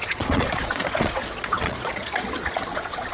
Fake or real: fake